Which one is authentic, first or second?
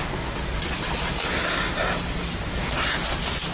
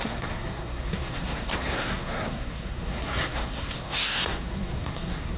first